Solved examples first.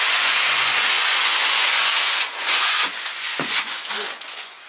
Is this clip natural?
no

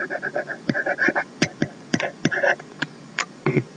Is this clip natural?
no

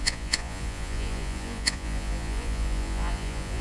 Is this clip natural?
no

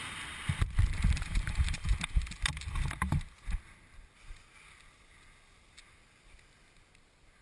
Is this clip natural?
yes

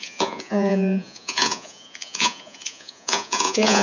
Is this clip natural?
no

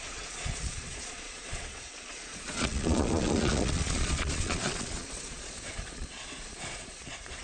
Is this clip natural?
no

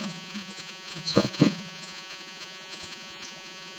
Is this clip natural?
no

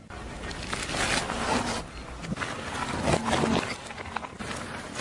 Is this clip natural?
yes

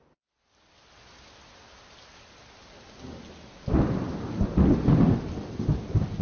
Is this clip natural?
yes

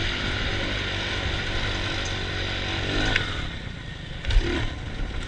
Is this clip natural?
yes